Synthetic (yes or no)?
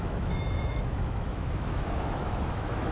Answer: yes